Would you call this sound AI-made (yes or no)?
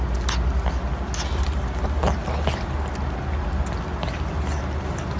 no